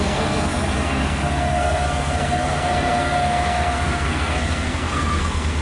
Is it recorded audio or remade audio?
remade